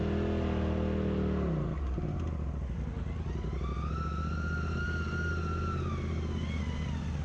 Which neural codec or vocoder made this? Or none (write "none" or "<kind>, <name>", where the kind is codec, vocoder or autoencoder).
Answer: none